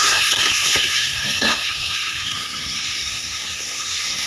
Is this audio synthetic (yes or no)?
yes